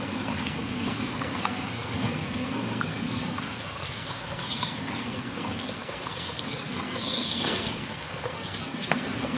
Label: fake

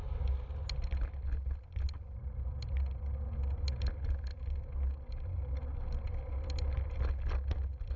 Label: real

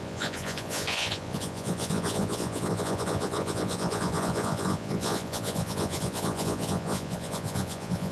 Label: fake